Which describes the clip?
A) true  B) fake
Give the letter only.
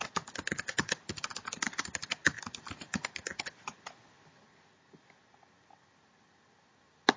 A